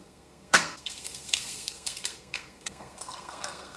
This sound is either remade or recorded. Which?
remade